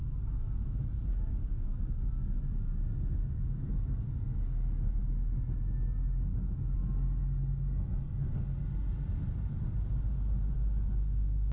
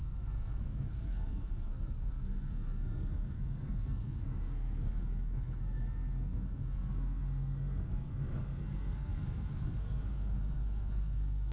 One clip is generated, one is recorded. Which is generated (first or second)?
second